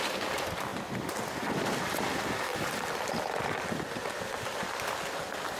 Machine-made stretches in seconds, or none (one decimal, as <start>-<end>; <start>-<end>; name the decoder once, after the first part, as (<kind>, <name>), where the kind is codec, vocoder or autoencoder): 0.7-2.0 (vocoder, BigVGAN v2); 2.5-4.9

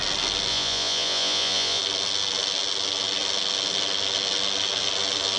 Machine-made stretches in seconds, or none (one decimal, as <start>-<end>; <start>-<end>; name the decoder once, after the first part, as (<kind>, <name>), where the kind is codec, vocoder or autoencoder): 0.5-1.8 (vocoder, Vocos)

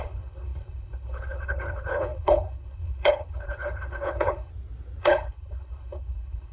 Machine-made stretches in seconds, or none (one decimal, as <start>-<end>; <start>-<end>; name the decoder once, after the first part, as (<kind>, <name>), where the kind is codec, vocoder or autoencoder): 0.0-4.5 (codec, HILCodec); 5.0-6.5

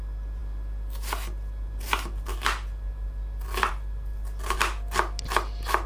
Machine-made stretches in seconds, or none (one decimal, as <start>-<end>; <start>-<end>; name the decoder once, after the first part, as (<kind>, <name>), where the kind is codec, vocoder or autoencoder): none

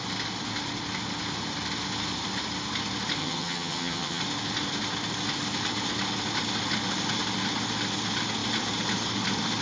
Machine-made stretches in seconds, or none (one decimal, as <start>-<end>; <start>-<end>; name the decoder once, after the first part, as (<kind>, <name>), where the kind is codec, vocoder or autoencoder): 3.2-4.2 (vocoder, HiFi-GAN)